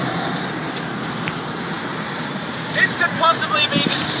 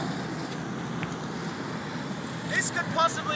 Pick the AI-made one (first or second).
first